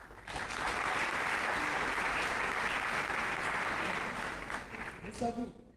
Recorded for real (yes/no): yes